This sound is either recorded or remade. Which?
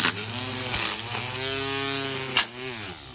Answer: recorded